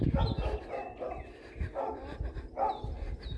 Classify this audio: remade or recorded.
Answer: recorded